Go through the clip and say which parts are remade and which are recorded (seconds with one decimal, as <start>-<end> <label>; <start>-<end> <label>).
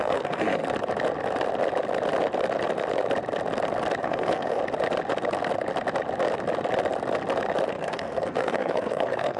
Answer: 0.0-0.6 remade; 0.6-4.0 recorded; 4.0-4.6 remade; 4.6-7.7 recorded; 7.7-9.4 remade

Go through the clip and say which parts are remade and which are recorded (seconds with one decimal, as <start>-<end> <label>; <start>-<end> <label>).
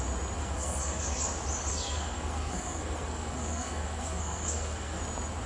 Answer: 0.0-0.4 recorded; 0.4-1.2 remade; 1.2-1.7 recorded; 1.7-5.0 remade; 5.0-5.5 recorded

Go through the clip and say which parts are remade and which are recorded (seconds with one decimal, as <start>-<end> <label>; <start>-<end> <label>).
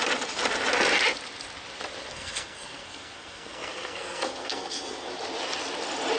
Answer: 0.0-2.1 recorded; 2.1-5.1 remade; 5.1-6.2 recorded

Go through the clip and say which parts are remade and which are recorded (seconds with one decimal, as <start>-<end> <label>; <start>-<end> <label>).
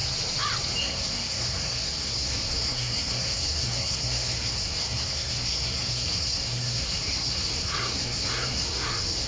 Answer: 0.0-0.8 recorded; 0.8-9.3 remade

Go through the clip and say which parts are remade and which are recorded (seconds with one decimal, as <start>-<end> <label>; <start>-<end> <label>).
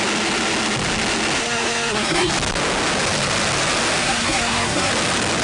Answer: 0.0-1.4 recorded; 1.4-2.3 remade; 2.3-4.0 recorded; 4.0-4.9 remade; 4.9-5.4 recorded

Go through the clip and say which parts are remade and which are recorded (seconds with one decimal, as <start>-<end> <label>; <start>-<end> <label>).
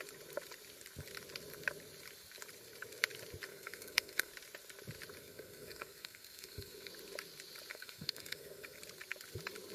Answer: 0.0-3.5 recorded; 3.5-4.3 remade; 4.3-5.2 recorded; 5.2-6.9 remade; 6.9-7.7 recorded; 7.7-8.8 remade; 8.8-9.7 recorded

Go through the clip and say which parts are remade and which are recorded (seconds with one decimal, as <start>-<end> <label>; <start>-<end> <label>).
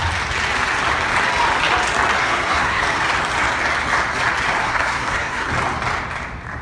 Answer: 0.0-2.2 recorded; 2.2-2.8 remade; 2.8-4.6 recorded; 4.6-5.5 remade; 5.5-6.6 recorded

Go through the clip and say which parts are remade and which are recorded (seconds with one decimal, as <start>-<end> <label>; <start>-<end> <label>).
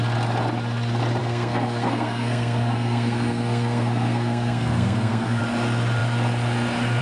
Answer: 0.0-1.2 recorded; 1.2-5.4 remade; 5.4-7.0 recorded